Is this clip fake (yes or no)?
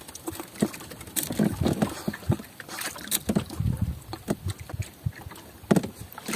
no